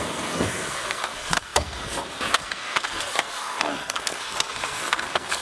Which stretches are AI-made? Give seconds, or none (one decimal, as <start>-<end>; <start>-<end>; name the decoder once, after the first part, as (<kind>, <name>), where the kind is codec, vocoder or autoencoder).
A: 0.0-5.4 (codec, SNAC)